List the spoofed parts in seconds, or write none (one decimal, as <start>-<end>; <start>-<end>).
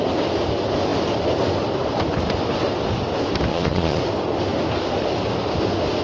3.5-4.0